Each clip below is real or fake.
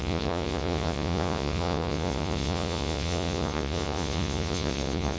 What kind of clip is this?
fake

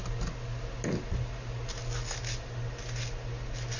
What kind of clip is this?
real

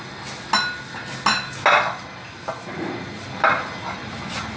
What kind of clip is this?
real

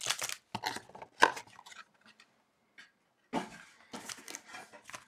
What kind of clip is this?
real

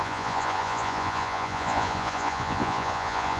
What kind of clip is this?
fake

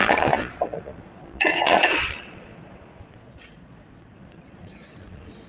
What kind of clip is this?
fake